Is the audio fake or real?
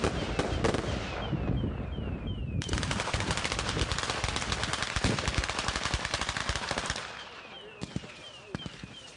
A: real